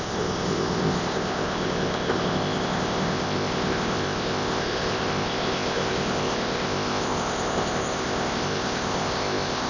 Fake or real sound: fake